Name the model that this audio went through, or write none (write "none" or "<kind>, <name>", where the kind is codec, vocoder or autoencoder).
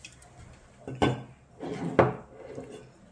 none